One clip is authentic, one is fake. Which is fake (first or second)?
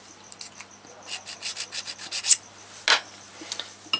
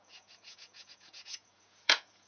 second